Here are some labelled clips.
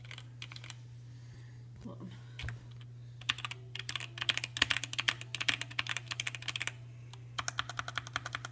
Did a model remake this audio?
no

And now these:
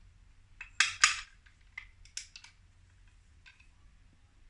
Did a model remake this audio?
no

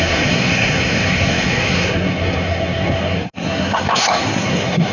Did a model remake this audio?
yes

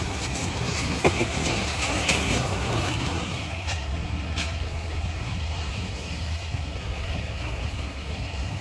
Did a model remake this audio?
yes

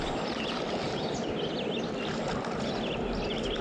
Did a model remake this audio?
yes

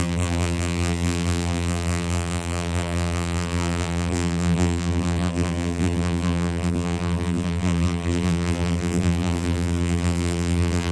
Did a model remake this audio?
yes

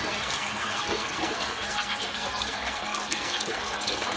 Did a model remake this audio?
yes